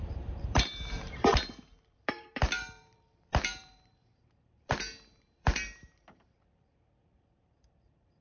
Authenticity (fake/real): fake